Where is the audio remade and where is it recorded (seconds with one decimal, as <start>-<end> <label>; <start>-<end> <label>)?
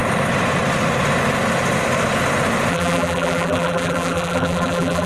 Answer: 0.0-2.7 recorded; 2.7-5.1 remade